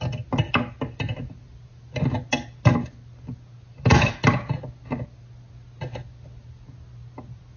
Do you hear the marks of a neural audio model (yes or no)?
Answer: no